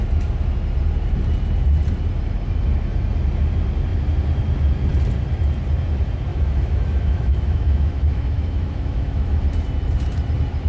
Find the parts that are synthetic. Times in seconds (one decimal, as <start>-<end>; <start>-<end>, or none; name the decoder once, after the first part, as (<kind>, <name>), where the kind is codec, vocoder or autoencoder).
6.3-9.4 (autoencoder, DAC-VAE)